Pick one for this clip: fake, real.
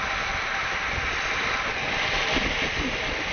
real